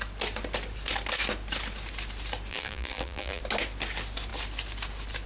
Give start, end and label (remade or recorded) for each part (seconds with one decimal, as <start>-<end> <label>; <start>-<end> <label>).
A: 0.0-2.5 recorded; 2.5-3.4 remade; 3.4-5.3 recorded